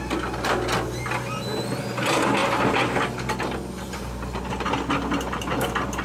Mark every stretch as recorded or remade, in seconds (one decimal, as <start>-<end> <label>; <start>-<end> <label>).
0.0-6.0 recorded